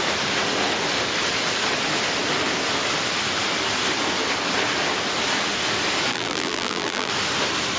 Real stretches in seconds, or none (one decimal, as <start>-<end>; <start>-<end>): 0.0-6.1; 7.1-7.8